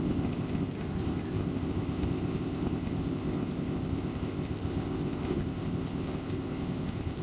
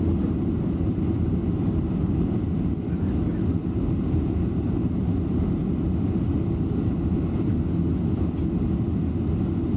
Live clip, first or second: second